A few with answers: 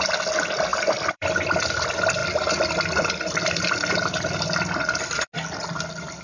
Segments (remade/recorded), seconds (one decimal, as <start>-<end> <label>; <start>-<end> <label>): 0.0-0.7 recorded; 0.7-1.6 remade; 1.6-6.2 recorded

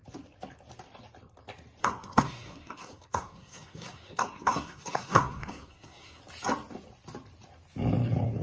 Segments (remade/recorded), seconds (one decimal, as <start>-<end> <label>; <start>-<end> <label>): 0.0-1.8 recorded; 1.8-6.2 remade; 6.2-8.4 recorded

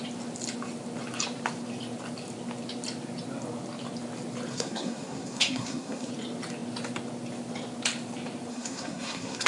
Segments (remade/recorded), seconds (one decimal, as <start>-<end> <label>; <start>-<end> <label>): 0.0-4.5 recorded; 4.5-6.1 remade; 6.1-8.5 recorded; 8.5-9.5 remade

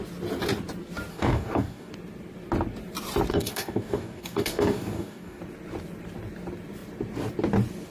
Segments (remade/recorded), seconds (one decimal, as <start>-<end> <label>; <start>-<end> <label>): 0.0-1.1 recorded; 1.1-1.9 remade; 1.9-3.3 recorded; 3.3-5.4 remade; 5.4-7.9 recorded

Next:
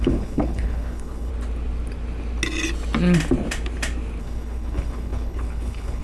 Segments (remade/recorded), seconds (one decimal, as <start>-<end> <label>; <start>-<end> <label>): 0.0-1.3 remade; 1.3-4.2 recorded; 4.2-6.0 remade

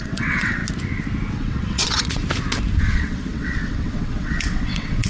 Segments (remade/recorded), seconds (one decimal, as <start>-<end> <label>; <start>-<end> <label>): 0.0-0.6 remade; 0.6-1.3 recorded; 1.3-2.2 remade; 2.2-2.8 recorded; 2.8-5.1 remade

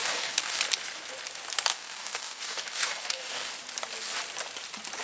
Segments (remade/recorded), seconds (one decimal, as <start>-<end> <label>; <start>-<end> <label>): 0.0-0.6 remade; 0.6-1.7 recorded; 1.7-3.5 remade; 3.5-5.0 recorded

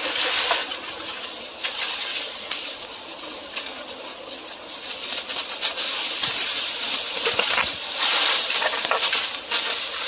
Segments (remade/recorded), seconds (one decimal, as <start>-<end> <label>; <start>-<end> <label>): 0.0-10.1 recorded